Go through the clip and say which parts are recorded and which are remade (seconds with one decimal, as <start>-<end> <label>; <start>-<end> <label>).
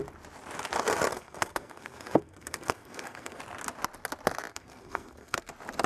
0.0-1.1 recorded; 1.1-3.4 remade; 3.4-4.5 recorded; 4.5-5.5 remade; 5.5-5.9 recorded